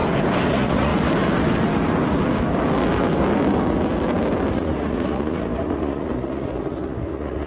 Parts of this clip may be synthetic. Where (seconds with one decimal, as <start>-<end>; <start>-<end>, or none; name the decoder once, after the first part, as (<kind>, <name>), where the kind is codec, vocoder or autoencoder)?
0.5-0.9 (vocoder, Vocos); 4.5-7.5